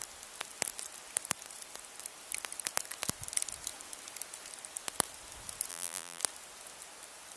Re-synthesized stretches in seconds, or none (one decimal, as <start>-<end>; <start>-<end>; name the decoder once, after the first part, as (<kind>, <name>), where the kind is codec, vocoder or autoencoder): 5.7-6.2 (vocoder, BigVGAN v2)